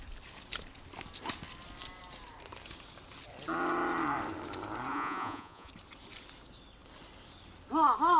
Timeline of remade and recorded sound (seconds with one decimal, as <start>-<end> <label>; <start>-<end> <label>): 0.0-4.9 recorded; 4.9-5.7 remade; 5.7-8.2 recorded